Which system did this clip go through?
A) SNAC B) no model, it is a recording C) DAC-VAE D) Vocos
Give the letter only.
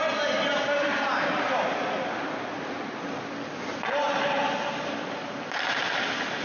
B